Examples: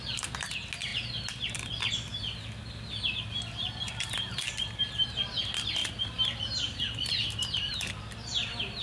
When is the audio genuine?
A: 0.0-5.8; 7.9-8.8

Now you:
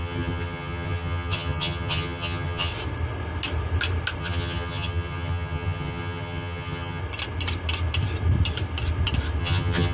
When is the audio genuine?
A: 2.7-4.2; 7.0-9.4

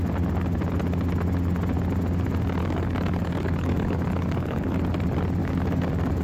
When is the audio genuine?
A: 0.0-2.6; 4.9-5.4

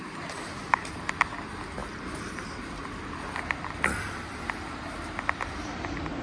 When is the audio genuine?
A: 0.0-6.2

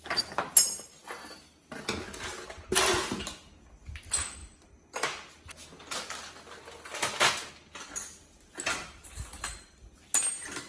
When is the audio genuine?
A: 0.0-10.7